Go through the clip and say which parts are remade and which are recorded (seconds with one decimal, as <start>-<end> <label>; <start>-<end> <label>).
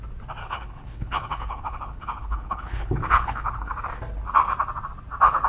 0.0-0.4 recorded; 0.4-3.7 remade; 3.7-5.5 recorded